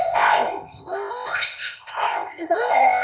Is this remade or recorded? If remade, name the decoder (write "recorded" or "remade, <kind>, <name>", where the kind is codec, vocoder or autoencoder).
remade, codec, ZipCodec